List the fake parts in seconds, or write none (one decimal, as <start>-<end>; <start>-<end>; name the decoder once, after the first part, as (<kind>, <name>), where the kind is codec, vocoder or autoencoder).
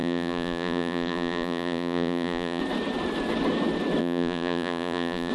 0.0-2.6 (vocoder, BigVGAN v2); 4.0-5.3